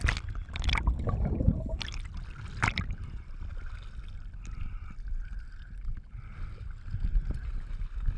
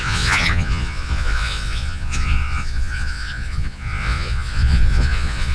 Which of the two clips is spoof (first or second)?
second